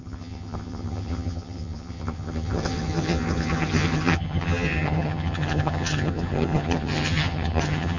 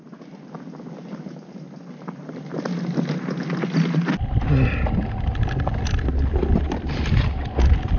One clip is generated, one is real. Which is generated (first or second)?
first